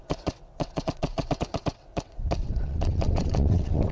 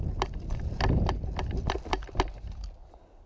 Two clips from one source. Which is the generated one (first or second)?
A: first